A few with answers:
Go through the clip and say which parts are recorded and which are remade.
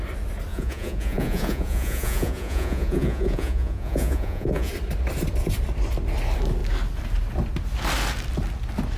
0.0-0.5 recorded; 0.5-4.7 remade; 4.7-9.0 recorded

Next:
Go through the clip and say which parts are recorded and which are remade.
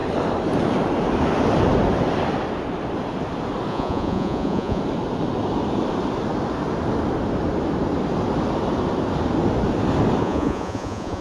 0.0-3.7 recorded; 3.7-4.8 remade; 4.8-10.2 recorded; 10.2-11.2 remade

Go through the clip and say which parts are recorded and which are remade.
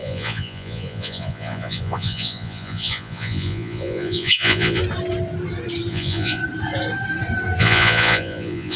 0.0-4.8 remade; 4.8-5.9 recorded; 5.9-6.4 remade; 6.4-7.6 recorded; 7.6-8.8 remade